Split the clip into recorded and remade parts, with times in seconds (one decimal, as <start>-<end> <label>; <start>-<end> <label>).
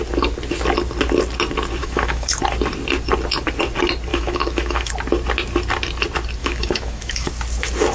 0.0-1.8 recorded; 1.8-2.4 remade; 2.4-4.1 recorded; 4.1-4.9 remade; 4.9-6.4 recorded; 6.4-7.3 remade; 7.3-7.9 recorded